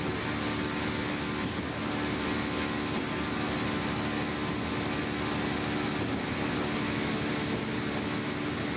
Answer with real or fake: real